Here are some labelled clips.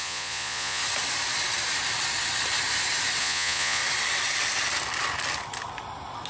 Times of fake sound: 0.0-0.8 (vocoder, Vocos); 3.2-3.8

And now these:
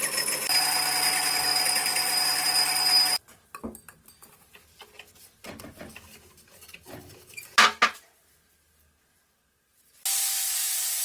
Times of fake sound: none

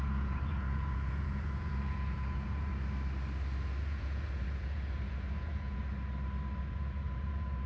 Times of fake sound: 0.0-2.7 (vocoder, Vocos); 3.8-5.8; 6.6-7.7